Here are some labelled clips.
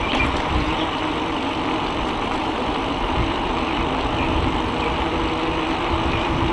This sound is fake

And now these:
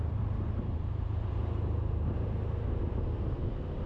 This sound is real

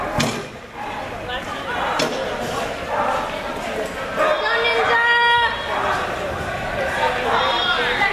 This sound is real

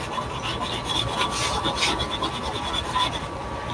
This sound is real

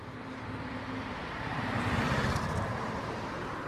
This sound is fake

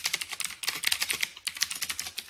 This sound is real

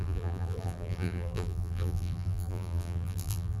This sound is fake